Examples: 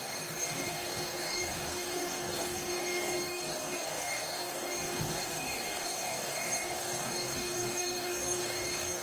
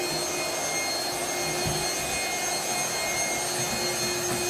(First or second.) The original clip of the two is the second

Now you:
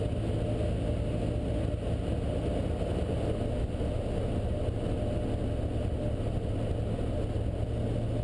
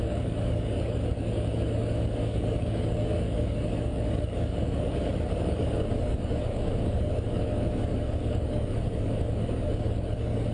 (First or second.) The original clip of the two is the first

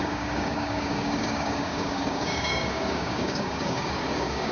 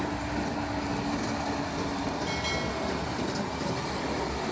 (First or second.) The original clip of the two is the second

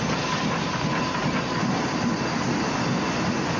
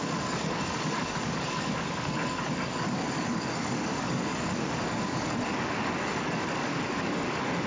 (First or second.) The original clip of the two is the first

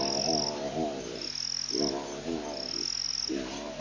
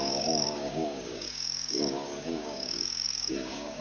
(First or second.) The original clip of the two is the first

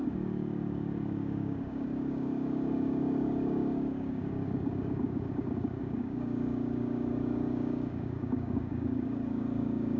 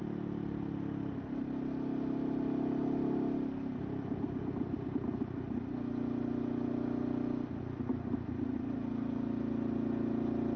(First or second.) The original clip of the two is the second